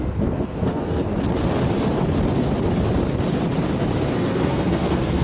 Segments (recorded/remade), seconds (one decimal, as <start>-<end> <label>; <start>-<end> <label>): 0.0-1.1 remade; 1.1-4.1 recorded; 4.1-5.2 remade